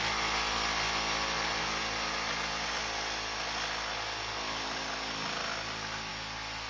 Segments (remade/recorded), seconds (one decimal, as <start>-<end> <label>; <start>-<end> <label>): 0.0-6.7 recorded